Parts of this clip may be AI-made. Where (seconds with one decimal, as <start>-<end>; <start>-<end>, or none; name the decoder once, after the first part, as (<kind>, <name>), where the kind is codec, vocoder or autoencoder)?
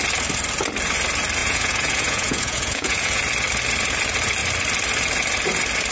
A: 1.4-3.2 (vocoder, Vocos)